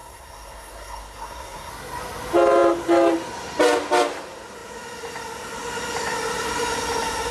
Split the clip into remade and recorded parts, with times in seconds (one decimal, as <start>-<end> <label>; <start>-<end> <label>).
0.0-1.7 remade; 1.7-7.3 recorded